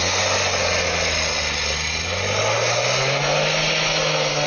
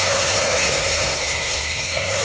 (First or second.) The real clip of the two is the first